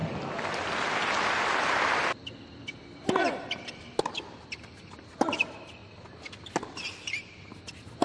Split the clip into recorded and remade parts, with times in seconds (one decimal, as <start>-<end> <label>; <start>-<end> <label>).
0.0-3.0 recorded; 3.0-3.8 remade; 3.8-5.8 recorded; 5.8-7.3 remade; 7.3-8.0 recorded